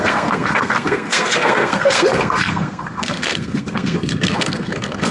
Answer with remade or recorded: remade